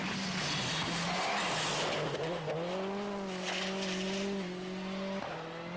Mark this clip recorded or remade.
recorded